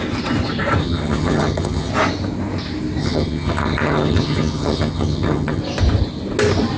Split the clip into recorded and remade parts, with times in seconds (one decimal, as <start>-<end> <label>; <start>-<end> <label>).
0.0-0.8 recorded; 0.8-1.9 remade; 1.9-3.0 recorded; 3.0-5.6 remade; 5.6-6.8 recorded

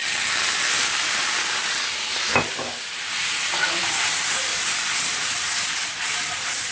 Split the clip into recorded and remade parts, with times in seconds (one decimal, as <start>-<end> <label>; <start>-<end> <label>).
0.0-6.7 recorded

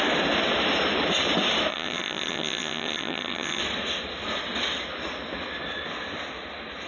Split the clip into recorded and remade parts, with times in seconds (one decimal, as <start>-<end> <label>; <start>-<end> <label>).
0.0-1.7 recorded; 1.7-3.6 remade; 3.6-6.9 recorded

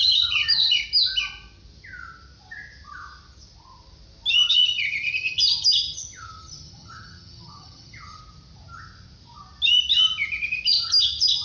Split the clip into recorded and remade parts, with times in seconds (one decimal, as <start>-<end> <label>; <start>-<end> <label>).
0.0-0.8 remade; 0.8-4.5 recorded; 4.5-8.2 remade; 8.2-10.7 recorded; 10.7-11.4 remade

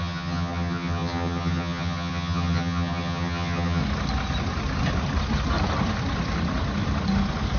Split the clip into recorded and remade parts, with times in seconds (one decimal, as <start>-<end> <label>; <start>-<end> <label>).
0.0-3.8 remade; 3.8-7.6 recorded

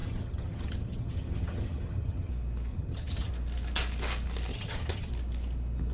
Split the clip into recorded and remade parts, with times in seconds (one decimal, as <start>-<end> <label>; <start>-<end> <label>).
0.0-2.3 remade; 2.3-2.7 recorded; 2.7-3.3 remade; 3.3-4.5 recorded; 4.5-5.1 remade; 5.1-5.9 recorded

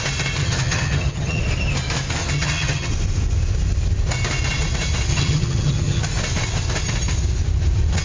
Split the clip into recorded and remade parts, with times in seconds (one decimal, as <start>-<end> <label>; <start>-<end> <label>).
0.0-0.4 recorded; 0.4-1.4 remade; 1.4-2.2 recorded; 2.2-2.9 remade; 2.9-5.1 recorded; 5.1-6.0 remade; 6.0-8.0 recorded